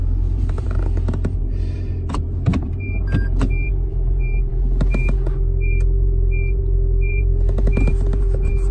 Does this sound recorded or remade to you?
remade